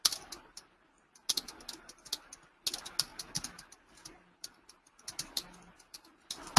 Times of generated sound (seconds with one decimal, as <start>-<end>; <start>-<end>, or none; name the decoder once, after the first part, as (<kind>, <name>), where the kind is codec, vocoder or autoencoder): none